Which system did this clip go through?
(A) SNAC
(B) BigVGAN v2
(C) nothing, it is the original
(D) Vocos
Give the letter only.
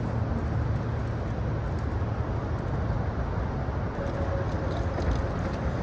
C